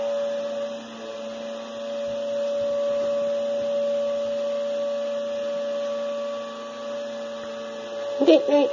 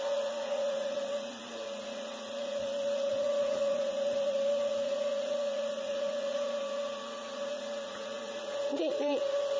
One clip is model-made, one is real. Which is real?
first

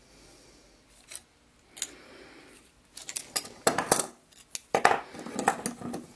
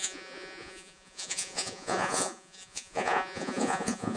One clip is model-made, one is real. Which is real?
first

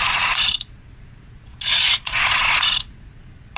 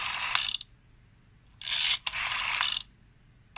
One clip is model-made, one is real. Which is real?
second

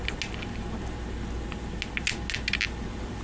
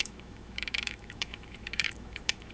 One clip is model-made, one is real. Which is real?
first